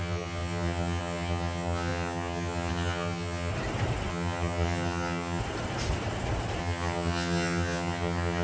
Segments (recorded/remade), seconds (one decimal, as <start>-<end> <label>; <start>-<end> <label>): 0.0-3.5 remade; 3.5-4.1 recorded; 4.1-5.4 remade; 5.4-6.6 recorded; 6.6-8.4 remade